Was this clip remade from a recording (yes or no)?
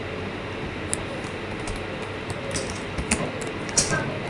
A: no